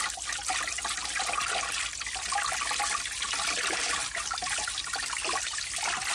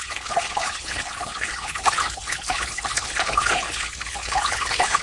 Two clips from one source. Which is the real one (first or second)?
first